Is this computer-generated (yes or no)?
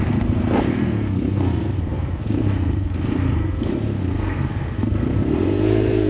yes